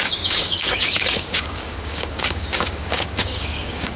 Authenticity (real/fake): fake